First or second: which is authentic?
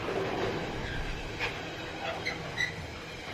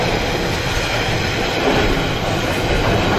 first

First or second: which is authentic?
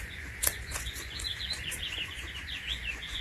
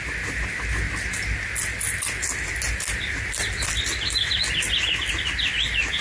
second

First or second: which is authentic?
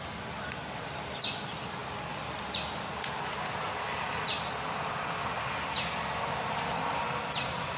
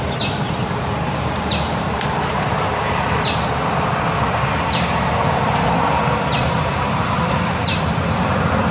first